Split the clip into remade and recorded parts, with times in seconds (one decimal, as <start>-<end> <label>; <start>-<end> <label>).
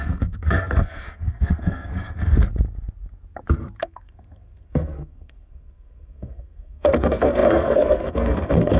0.0-2.5 remade; 2.5-3.8 recorded; 3.8-8.8 remade